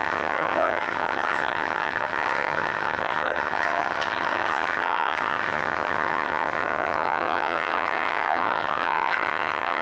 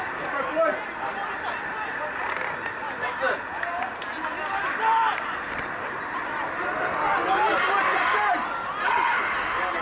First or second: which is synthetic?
first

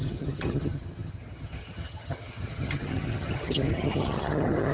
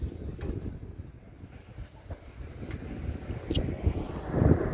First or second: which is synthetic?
first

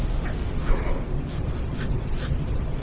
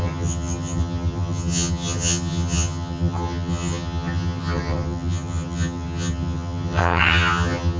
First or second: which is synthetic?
second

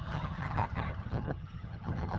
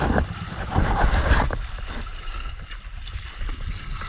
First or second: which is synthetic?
first